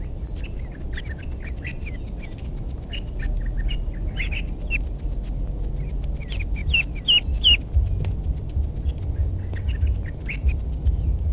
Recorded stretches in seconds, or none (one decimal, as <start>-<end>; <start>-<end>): 0.0-11.3